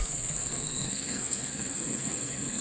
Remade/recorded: remade